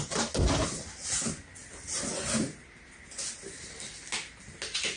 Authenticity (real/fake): real